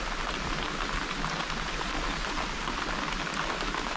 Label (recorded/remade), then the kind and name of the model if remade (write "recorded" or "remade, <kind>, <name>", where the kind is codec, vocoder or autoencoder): recorded